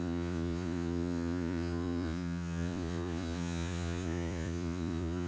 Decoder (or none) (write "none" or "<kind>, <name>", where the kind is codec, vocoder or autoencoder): vocoder, Vocos